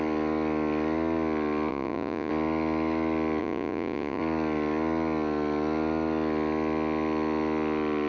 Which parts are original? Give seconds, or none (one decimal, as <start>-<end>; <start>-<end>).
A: 0.0-1.7; 2.3-3.4; 4.2-8.1